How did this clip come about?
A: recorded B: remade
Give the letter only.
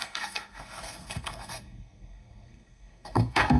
B